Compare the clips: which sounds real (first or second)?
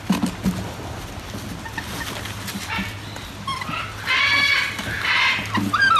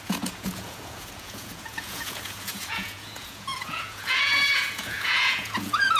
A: first